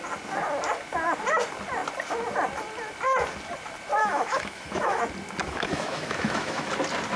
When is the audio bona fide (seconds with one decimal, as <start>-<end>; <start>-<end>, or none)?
0.0-4.0; 5.0-5.4; 6.7-7.2